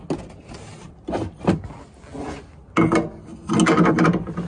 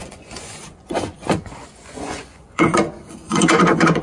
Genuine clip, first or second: first